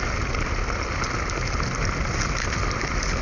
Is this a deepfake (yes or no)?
no